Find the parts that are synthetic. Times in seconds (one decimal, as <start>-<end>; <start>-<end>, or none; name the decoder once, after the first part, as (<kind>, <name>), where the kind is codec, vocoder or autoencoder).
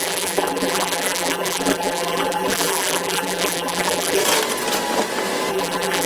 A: 0.0-4.2 (vocoder, BigVGAN v2); 5.5-6.1